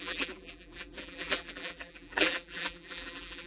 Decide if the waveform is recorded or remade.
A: remade